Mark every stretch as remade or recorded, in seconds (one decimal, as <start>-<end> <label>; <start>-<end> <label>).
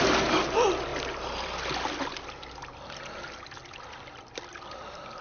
0.0-5.2 recorded